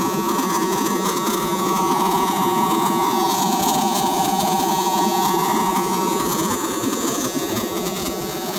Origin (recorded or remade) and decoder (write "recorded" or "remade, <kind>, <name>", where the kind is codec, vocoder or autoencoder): remade, vocoder, Vocos